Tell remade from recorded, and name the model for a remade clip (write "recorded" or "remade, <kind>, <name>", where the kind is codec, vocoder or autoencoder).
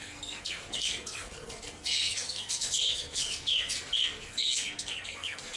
remade, codec, SNAC